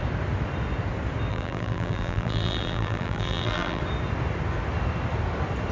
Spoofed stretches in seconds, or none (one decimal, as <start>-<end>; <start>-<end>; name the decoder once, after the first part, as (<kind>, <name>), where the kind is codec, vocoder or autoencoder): 1.3-3.8 (vocoder, BigVGAN v2)